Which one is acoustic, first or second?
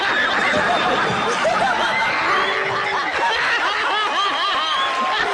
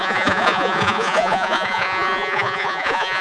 first